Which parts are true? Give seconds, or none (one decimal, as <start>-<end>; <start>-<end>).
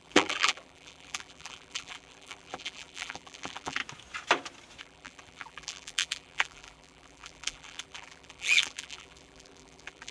3.8-4.8